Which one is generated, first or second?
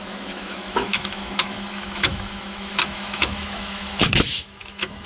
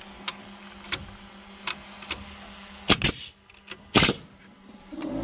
first